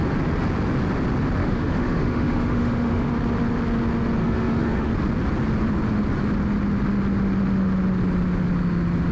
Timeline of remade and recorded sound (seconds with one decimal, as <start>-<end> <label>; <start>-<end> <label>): 0.0-1.4 recorded; 1.4-3.1 remade; 3.1-4.2 recorded; 4.2-4.9 remade; 4.9-9.1 recorded